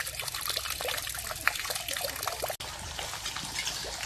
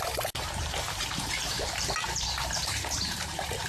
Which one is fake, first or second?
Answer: second